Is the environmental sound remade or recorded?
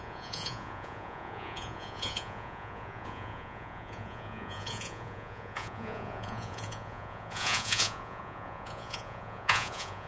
remade